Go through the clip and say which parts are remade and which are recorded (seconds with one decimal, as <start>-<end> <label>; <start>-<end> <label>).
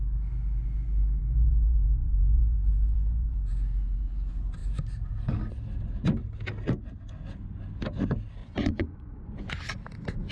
0.0-1.2 recorded; 1.2-3.5 remade; 3.5-8.4 recorded; 8.4-9.5 remade; 9.5-10.3 recorded